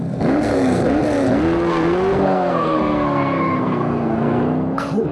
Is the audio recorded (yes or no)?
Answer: no